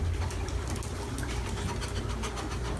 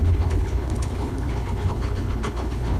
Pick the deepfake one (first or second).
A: second